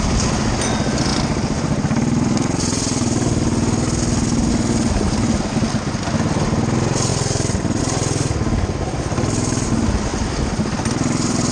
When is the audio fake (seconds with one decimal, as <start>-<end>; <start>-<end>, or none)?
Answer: 1.1-4.5; 10.1-11.5